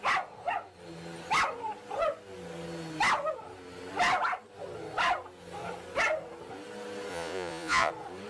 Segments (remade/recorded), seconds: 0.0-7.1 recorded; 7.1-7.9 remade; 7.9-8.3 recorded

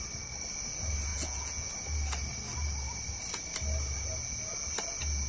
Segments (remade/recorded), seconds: 0.0-1.1 recorded; 1.1-1.7 remade; 1.7-5.3 recorded

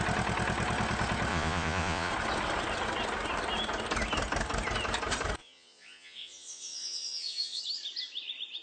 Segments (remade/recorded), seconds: 0.0-1.3 recorded; 1.3-2.1 remade; 2.1-5.4 recorded; 5.4-7.6 remade; 7.6-8.6 recorded

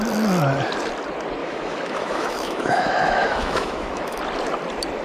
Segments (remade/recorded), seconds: 0.0-1.4 recorded; 1.4-4.2 remade; 4.2-5.0 recorded

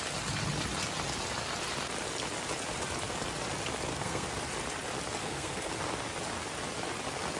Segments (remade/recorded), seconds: 0.0-3.9 recorded; 3.9-4.4 remade; 4.4-5.2 recorded; 5.2-5.7 remade; 5.7-7.4 recorded

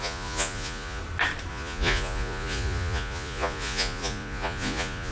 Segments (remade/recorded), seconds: 0.0-1.0 remade; 1.0-1.5 recorded; 1.5-5.1 remade